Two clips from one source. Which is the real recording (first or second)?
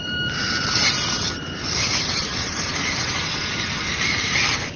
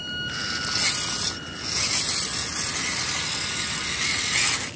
second